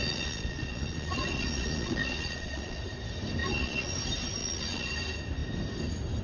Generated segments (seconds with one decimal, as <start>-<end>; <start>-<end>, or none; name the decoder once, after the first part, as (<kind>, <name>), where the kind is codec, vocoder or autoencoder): 0.0-2.8 (vocoder, Vocos); 3.4-3.9; 4.4-4.9